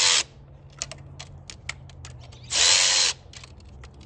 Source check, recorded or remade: recorded